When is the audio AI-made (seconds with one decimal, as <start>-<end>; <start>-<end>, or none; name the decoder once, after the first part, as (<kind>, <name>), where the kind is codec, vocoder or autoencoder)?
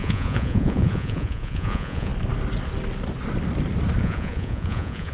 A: 0.0-2.1 (vocoder, Vocos); 4.0-5.1